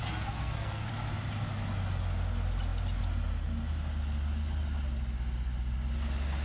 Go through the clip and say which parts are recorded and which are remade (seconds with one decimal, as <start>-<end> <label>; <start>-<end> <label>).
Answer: 0.0-0.9 remade; 0.9-6.4 recorded